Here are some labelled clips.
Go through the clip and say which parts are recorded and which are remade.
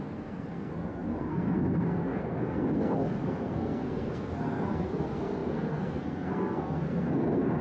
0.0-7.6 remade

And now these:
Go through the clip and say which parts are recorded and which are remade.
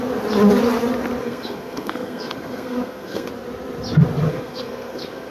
0.0-1.2 recorded; 1.2-3.3 remade; 3.3-4.3 recorded; 4.3-5.3 remade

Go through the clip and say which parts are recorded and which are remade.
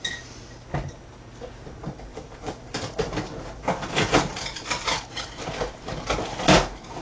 0.0-7.0 recorded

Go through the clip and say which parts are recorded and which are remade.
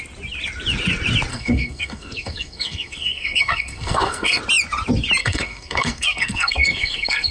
0.0-1.3 recorded; 1.3-4.4 remade; 4.4-5.2 recorded; 5.2-7.3 remade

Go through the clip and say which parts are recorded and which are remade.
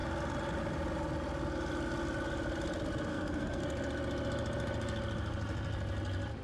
0.0-3.1 recorded; 3.1-3.6 remade; 3.6-6.4 recorded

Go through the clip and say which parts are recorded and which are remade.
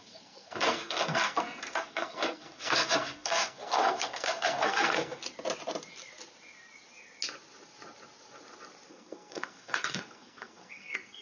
0.0-5.2 remade; 5.2-8.9 recorded; 8.9-11.2 remade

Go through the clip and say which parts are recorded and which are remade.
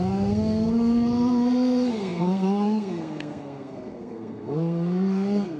0.0-5.6 remade